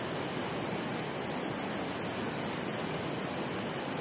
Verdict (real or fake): real